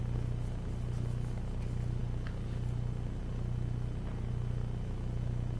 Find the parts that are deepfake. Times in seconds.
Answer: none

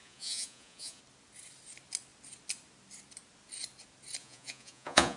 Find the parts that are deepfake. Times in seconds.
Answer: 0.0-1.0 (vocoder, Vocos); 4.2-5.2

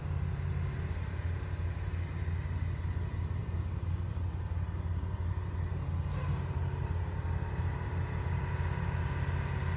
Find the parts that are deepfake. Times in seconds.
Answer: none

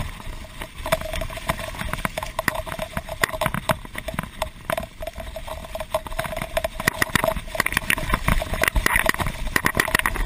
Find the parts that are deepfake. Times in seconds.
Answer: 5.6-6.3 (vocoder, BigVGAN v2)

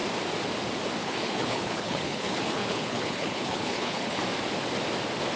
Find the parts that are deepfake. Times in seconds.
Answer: 1.0-4.2 (codec, HILCodec)

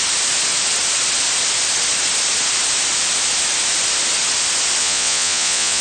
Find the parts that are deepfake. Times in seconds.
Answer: 4.8-5.8 (vocoder, Vocos)

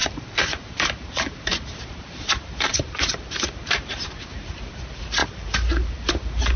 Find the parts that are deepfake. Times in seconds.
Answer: 0.0-6.6 (vocoder, BigVGAN v2)